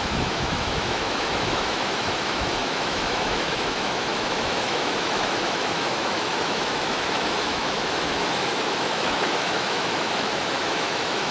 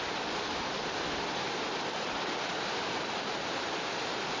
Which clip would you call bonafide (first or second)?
second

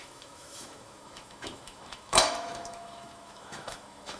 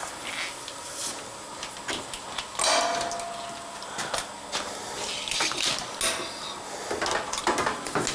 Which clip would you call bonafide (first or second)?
second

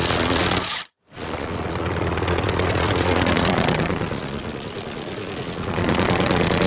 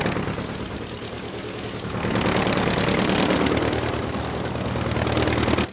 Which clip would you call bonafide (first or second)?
second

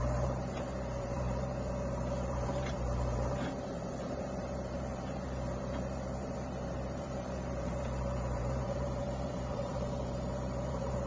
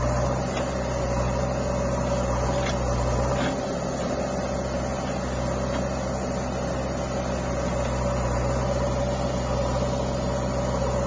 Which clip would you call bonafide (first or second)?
second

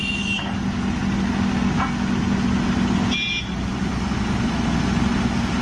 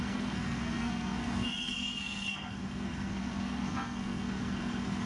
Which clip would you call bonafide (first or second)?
first